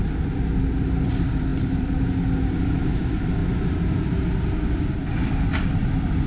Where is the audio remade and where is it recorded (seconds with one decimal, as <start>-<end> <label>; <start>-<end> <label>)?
0.0-3.4 remade; 3.4-5.8 recorded; 5.8-6.3 remade